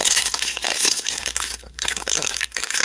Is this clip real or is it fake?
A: fake